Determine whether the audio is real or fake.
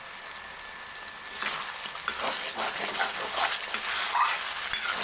real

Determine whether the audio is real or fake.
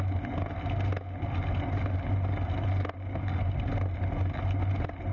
real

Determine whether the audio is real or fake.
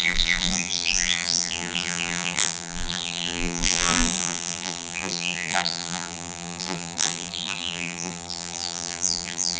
fake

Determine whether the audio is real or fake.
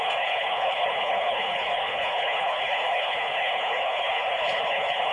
fake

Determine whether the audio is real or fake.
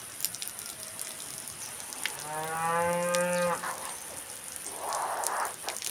real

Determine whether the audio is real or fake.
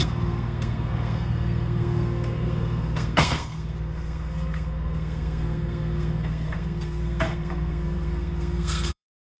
fake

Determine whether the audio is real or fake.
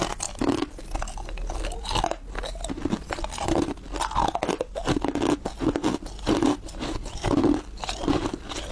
real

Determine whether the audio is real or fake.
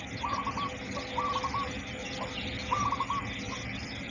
real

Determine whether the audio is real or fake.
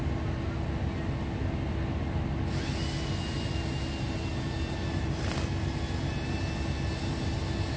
real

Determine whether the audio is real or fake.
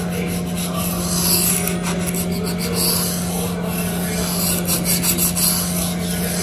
real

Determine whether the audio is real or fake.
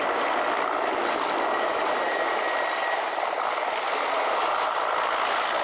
real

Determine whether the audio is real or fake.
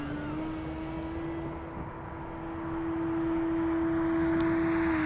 real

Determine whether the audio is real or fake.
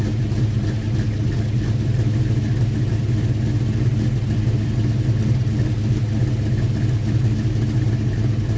real